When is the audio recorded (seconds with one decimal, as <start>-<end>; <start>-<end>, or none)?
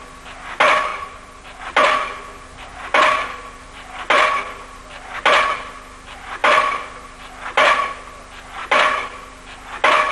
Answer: 0.0-0.9; 1.6-2.7; 4.8-6.4; 7.9-8.6; 9.3-10.1